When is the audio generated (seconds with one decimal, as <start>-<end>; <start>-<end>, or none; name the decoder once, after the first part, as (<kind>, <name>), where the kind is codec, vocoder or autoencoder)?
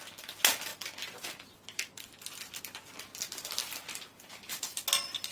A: 3.6-4.6 (vocoder, BigVGAN v2)